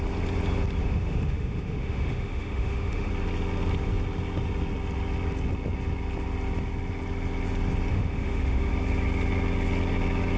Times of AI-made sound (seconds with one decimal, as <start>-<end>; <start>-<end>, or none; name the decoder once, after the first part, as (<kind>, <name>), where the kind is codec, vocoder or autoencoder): 0.8-3.1 (autoencoder, DAC-VAE); 7.9-8.7